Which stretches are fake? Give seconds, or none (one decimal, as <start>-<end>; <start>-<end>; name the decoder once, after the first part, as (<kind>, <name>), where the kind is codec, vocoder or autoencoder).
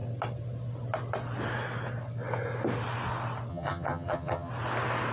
3.5-4.5 (vocoder, HiFi-GAN)